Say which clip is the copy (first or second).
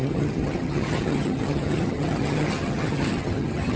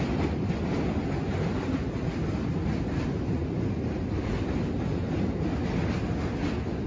first